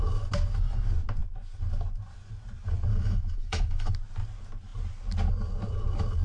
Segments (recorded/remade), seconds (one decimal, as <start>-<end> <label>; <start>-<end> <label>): 0.0-2.9 recorded; 2.9-3.9 remade; 3.9-6.2 recorded